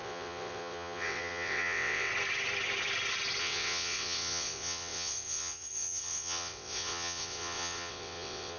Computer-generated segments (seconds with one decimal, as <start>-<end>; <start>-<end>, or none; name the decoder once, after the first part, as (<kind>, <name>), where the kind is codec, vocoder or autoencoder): 0.0-2.1 (vocoder, WaveNeXt); 3.4-8.6